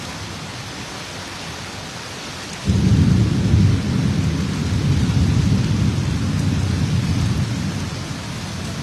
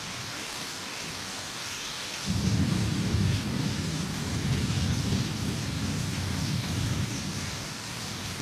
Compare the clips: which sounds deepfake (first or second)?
second